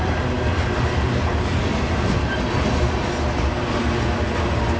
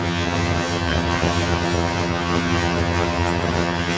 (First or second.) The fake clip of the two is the second